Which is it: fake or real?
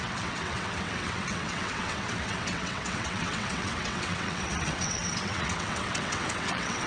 fake